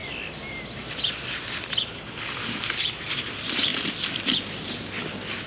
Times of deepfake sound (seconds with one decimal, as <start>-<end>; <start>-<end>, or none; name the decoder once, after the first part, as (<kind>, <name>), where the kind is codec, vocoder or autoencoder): none